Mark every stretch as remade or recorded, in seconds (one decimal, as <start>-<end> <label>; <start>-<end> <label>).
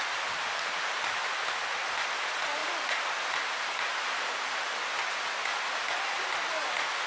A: 0.0-7.1 recorded